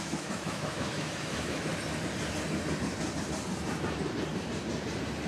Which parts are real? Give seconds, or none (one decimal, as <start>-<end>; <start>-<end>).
1.7-5.3